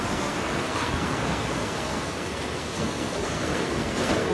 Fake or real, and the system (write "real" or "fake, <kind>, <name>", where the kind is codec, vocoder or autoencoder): fake, codec, SNAC